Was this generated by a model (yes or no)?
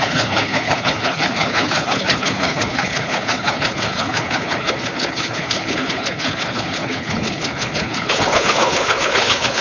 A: yes